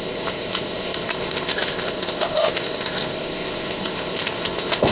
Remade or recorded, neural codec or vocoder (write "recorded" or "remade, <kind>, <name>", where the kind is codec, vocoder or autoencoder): remade, codec, ZipCodec